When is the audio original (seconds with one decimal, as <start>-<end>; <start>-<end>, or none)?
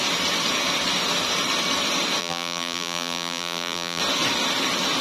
0.0-2.2; 4.0-5.0